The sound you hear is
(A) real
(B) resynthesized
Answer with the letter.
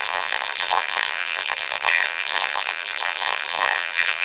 B